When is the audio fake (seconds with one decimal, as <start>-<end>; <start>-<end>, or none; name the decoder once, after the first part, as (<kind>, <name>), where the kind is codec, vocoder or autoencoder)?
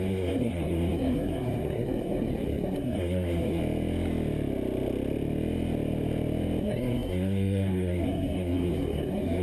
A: 0.0-3.6 (codec, SNAC); 6.6-9.4